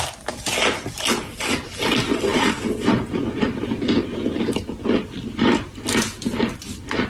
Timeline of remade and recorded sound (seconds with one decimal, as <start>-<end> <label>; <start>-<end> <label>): 0.0-7.1 recorded